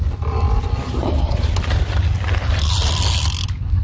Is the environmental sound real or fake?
real